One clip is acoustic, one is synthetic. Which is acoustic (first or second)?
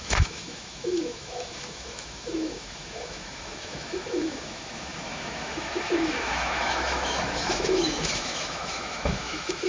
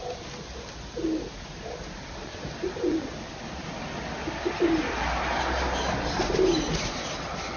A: second